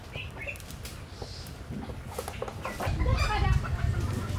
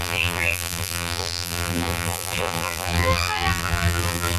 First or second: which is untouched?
first